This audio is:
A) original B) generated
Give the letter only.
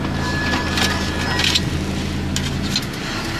A